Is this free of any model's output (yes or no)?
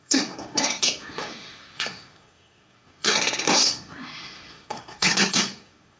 no